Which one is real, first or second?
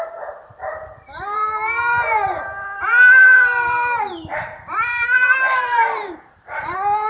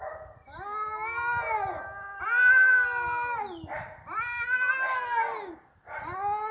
second